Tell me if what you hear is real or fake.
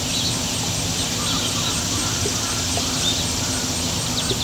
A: real